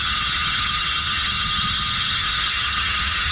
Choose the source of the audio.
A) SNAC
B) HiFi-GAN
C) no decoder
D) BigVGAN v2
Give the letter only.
B